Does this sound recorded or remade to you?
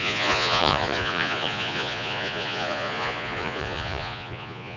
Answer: remade